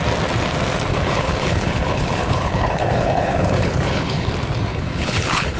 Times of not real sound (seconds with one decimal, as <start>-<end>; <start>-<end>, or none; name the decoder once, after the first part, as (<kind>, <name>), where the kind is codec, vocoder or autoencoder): 0.9-4.3 (codec, HILCodec); 4.7-5.6